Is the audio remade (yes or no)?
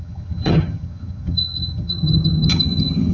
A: yes